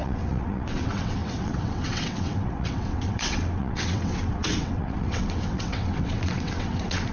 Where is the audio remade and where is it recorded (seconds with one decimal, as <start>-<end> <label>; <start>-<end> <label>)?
0.0-7.1 remade